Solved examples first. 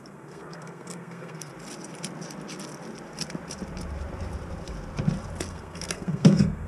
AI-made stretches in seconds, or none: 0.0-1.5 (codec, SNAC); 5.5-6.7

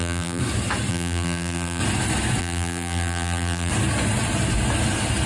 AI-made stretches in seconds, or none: 0.0-0.4 (vocoder, BigVGAN v2); 0.9-1.8; 2.4-3.7

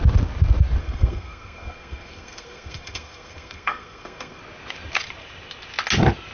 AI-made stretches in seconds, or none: 0.8-4.4 (codec, SNAC)

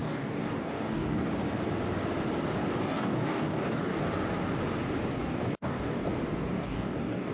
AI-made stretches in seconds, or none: 0.0-1.3 (codec, DAC); 2.6-4.0; 5.1-6.0; 6.5-7.3